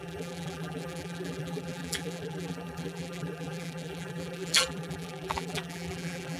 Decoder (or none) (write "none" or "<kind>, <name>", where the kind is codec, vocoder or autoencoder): vocoder, BigVGAN v2